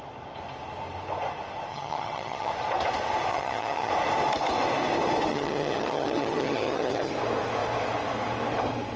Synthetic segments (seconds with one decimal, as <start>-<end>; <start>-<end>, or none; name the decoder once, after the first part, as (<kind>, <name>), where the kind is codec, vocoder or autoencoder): 1.7-2.5 (vocoder, HiFi-GAN); 3.3-3.9; 5.3-7.1